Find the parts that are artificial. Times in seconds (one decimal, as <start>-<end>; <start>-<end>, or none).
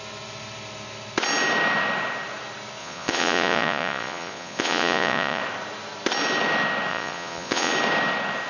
2.8-5.4; 6.9-7.7